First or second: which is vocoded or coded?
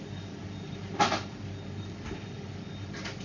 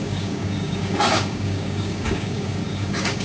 second